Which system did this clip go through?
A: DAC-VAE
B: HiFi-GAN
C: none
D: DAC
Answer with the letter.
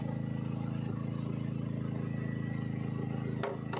C